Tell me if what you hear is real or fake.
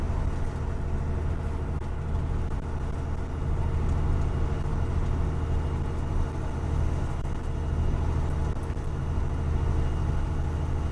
real